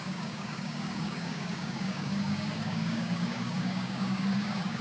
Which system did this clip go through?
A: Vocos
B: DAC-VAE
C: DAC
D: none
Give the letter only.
C